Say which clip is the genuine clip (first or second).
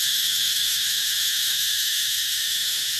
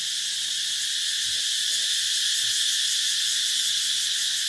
second